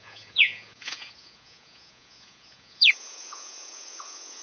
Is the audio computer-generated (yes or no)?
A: yes